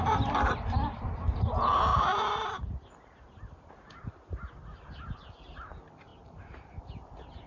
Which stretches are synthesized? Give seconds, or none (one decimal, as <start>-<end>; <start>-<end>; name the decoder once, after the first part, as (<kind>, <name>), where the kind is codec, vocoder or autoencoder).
1.9-3.7 (vocoder, BigVGAN v2); 6.1-6.8